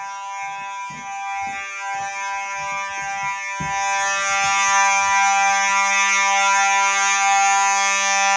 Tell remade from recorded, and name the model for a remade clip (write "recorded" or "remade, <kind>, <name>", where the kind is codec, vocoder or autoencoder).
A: recorded